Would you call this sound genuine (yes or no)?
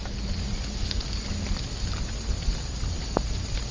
yes